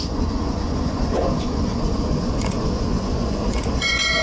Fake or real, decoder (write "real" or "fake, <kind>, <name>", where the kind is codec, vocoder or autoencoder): fake, vocoder, Vocos